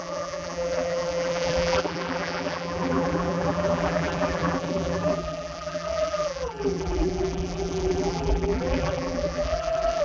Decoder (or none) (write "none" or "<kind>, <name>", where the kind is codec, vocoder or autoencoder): vocoder, BigVGAN v2